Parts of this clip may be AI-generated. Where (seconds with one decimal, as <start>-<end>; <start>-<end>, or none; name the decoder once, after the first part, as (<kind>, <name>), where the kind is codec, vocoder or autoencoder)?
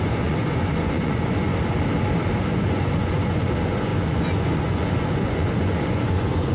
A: 0.0-1.5 (vocoder, Vocos); 2.5-6.5